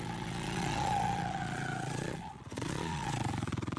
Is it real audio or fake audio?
fake